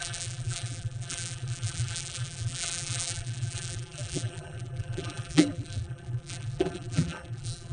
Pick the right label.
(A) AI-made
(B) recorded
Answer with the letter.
A